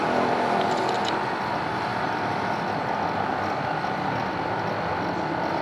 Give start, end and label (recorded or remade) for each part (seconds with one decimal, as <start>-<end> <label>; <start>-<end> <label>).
0.0-5.6 recorded